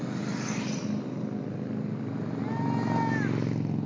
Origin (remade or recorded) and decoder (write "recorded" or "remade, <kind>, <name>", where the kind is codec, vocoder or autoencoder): recorded